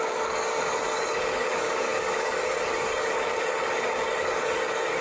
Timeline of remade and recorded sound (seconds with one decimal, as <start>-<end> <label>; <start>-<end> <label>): 0.0-5.0 remade